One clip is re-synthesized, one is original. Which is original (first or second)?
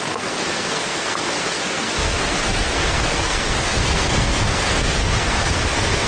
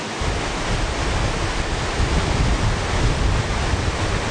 second